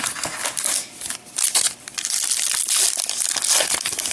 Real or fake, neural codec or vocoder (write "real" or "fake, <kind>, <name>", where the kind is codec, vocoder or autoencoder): real